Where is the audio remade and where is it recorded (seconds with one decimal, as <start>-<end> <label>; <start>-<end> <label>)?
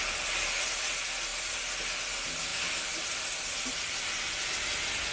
0.0-5.1 recorded